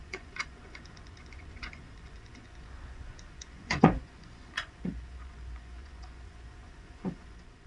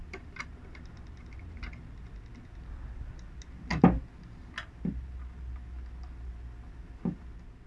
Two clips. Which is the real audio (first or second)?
second